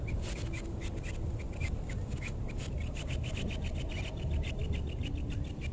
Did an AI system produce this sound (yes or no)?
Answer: no